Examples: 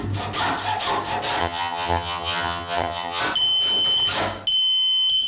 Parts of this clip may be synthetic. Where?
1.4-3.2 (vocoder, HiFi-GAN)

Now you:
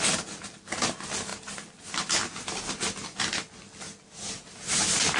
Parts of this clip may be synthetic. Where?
none

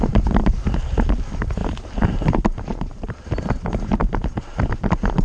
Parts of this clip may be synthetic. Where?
1.6-4.7 (vocoder, BigVGAN v2)

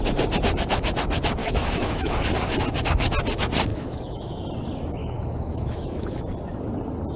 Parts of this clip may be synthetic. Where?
1.4-2.1 (autoencoder, DAC-VAE); 3.7-4.5; 5.0-6.2